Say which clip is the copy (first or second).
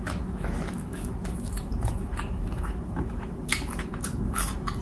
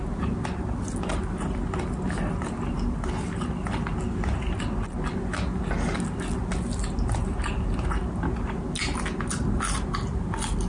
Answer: first